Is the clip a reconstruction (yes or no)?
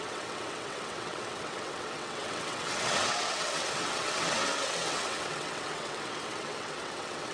yes